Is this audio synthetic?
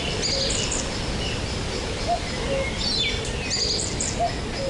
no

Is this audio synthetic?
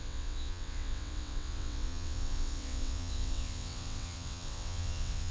yes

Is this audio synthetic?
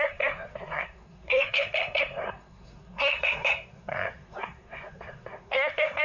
yes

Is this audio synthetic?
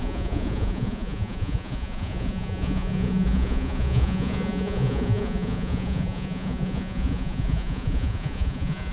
yes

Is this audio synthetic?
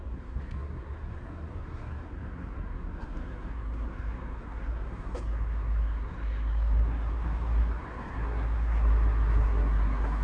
yes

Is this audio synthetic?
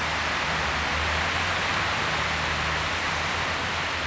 no